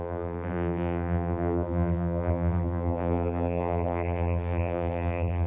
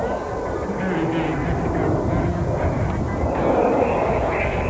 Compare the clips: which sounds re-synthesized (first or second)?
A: first